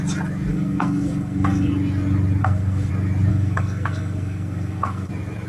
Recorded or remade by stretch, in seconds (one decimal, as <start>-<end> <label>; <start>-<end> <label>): 0.0-0.5 recorded; 0.5-1.7 remade; 1.7-2.4 recorded; 2.4-2.9 remade; 2.9-3.3 recorded; 3.3-5.1 remade; 5.1-5.5 recorded